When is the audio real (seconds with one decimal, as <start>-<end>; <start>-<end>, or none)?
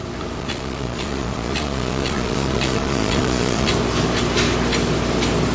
0.0-0.4; 3.7-5.5